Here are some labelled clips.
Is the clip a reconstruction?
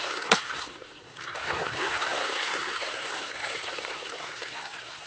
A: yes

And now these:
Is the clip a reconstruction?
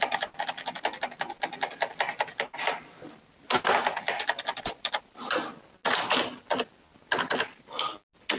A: no